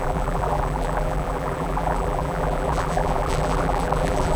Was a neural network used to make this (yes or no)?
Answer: yes